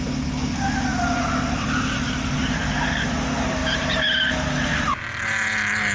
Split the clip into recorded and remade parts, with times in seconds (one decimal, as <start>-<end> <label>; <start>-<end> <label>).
0.0-5.9 recorded